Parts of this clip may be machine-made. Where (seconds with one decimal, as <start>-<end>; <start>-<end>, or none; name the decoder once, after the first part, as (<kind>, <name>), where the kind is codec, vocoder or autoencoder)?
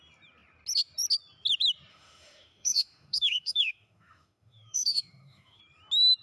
1.9-5.6 (autoencoder, DAC-VAE)